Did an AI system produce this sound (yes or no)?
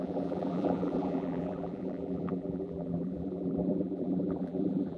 yes